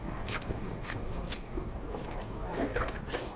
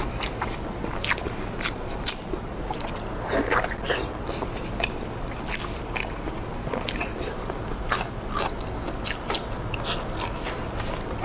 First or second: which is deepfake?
first